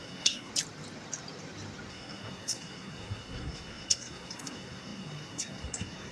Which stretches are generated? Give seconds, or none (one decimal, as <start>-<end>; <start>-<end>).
0.0-0.5; 1.9-6.1